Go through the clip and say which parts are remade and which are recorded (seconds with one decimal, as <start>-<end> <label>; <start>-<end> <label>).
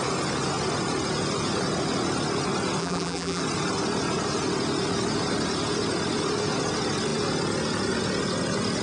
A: 0.0-2.8 recorded; 2.8-3.4 remade; 3.4-8.8 recorded